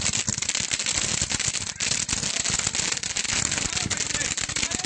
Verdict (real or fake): real